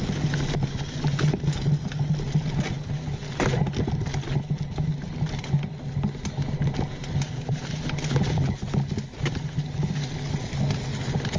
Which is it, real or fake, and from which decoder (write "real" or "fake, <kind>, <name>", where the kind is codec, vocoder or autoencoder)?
real